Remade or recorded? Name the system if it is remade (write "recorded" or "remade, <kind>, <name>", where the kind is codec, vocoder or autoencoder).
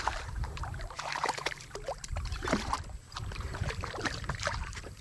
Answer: remade, vocoder, BigVGAN v2